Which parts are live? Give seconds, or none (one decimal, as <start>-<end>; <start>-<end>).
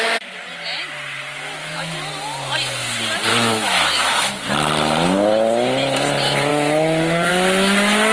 0.0-1.6; 2.1-3.3; 4.5-6.5; 7.3-8.1